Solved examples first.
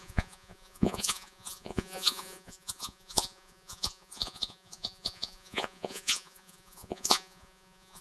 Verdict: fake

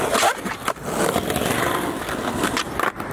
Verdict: real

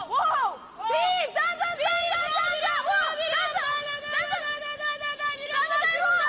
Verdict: real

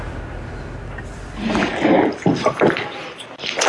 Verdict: real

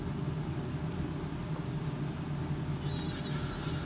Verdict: real